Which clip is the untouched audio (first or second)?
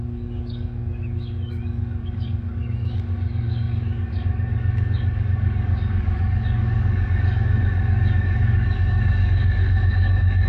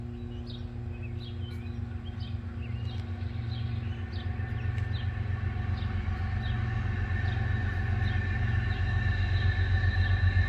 second